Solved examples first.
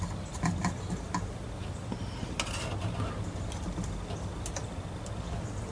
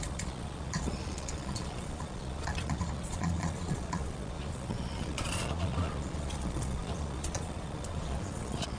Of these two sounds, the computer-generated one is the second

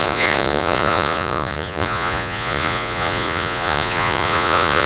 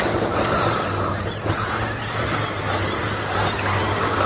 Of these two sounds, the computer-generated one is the first